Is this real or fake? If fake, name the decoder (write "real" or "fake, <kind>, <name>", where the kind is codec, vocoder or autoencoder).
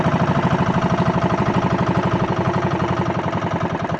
fake, vocoder, BigVGAN v2